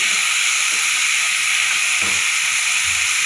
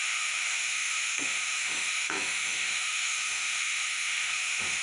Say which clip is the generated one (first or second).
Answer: second